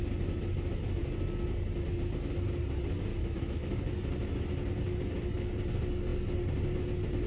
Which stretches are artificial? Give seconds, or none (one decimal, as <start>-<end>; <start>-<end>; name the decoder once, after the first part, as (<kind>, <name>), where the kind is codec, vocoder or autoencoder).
3.1-3.8 (autoencoder, DAC-VAE)